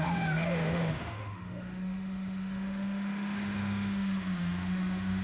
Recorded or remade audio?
remade